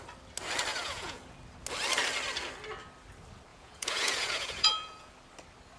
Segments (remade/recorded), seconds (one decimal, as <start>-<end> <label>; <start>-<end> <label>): 0.0-0.7 recorded; 0.7-1.2 remade; 1.2-3.5 recorded; 3.5-5.1 remade; 5.1-5.8 recorded